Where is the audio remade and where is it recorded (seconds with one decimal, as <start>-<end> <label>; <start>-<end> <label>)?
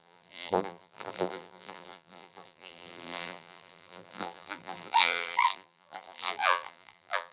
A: 0.0-7.3 remade